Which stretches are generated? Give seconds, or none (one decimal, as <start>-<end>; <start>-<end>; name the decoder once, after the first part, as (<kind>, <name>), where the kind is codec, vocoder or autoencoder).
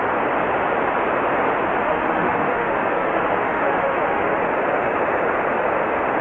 1.8-4.5 (autoencoder, DAC-VAE)